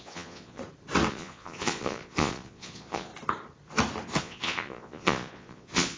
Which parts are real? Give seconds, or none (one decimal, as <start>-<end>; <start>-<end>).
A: 0.6-1.1; 3.1-4.2